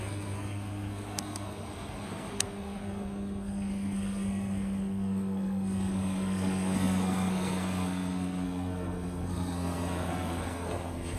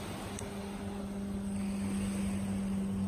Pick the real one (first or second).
second